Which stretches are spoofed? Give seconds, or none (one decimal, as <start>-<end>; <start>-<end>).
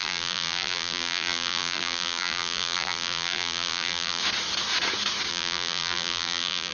0.0-4.2; 5.3-6.7